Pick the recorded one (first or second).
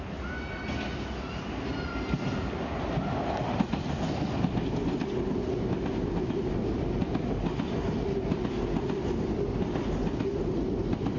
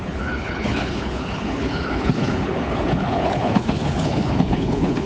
first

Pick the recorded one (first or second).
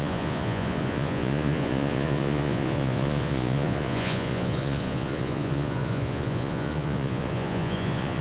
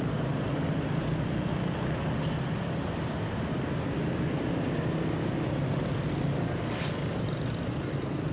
second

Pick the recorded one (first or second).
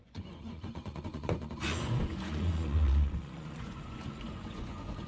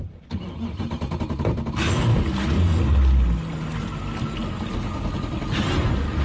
second